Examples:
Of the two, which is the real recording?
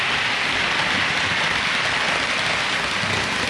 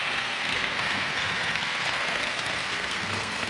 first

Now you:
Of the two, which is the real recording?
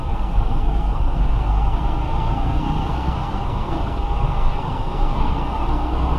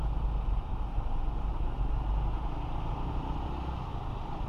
second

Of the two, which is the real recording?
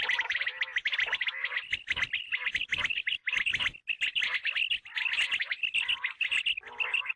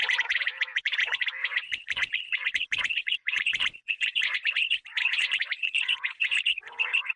first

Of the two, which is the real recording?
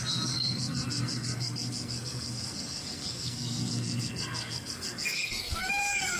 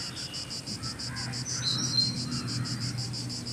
second